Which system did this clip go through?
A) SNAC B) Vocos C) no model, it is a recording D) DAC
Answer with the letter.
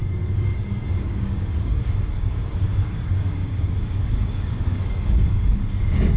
D